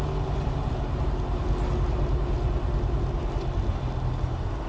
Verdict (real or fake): real